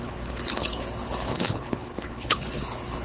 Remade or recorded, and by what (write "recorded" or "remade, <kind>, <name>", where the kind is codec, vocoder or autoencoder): remade, codec, HILCodec